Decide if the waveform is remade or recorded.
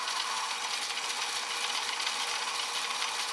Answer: recorded